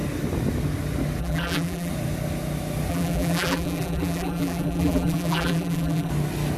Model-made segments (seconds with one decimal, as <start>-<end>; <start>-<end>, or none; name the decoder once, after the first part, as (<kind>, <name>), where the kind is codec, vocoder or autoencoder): 1.2-1.9 (vocoder, BigVGAN v2); 2.9-6.1